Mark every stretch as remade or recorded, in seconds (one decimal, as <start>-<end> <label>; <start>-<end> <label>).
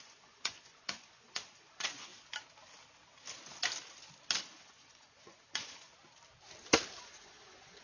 0.0-2.1 remade; 2.1-4.4 recorded; 4.4-5.9 remade; 5.9-7.0 recorded; 7.0-7.8 remade